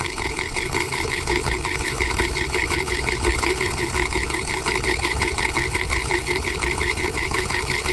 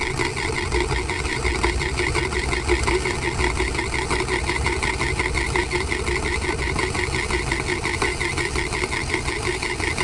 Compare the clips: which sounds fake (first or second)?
first